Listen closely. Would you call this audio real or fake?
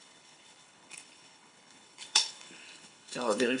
fake